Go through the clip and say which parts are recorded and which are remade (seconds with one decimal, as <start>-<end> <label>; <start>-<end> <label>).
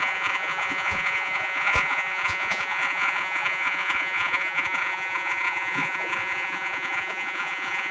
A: 0.0-7.9 remade